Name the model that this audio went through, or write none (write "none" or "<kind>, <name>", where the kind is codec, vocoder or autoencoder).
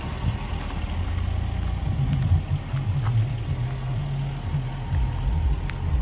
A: none